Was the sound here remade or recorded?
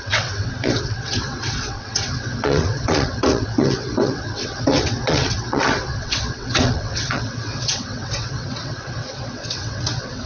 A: remade